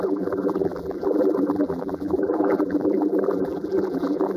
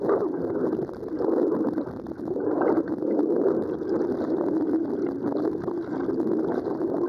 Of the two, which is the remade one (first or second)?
first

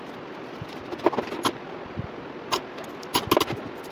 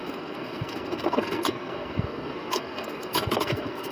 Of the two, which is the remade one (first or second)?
second